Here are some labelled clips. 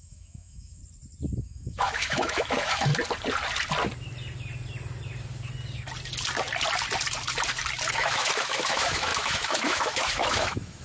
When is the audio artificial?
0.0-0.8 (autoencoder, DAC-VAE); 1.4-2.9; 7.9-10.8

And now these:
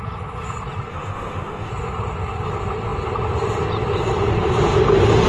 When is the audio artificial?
0.9-1.7 (autoencoder, DAC-VAE)